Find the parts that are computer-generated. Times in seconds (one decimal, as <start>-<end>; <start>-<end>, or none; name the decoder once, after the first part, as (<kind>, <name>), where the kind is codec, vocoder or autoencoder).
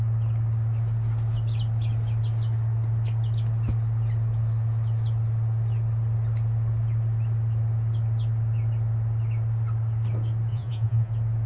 10.5-11.1 (vocoder, Vocos)